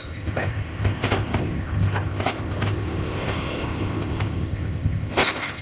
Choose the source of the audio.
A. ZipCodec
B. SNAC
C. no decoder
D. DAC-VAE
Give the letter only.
A